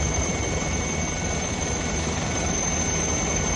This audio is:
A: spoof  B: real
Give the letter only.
A